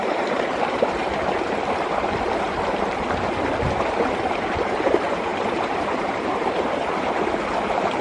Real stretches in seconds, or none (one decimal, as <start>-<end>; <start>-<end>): 1.0-3.9